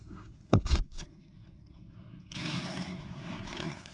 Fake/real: fake